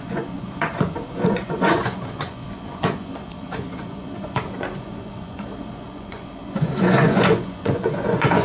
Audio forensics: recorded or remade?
remade